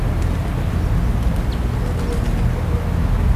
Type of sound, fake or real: real